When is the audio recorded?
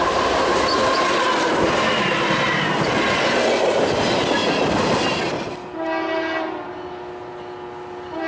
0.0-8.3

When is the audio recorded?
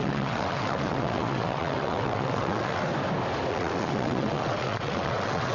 2.9-3.5